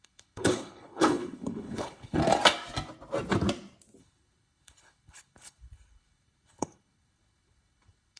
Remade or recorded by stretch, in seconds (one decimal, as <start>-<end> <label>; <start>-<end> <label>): 0.0-2.2 remade; 2.2-4.0 recorded; 4.0-8.2 remade